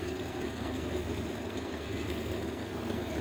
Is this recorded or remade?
remade